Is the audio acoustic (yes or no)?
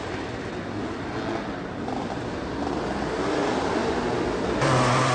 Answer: yes